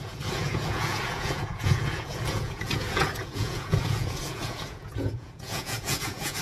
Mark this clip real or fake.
fake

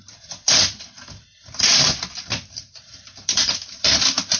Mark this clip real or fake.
real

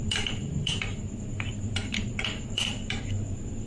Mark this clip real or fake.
fake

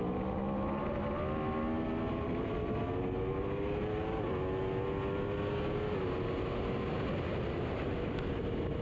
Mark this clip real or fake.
real